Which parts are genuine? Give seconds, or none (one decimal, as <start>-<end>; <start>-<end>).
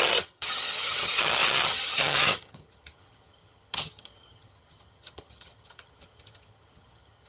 none